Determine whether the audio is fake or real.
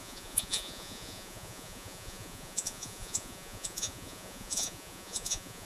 fake